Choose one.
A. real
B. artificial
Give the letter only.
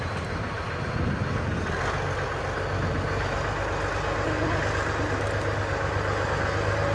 A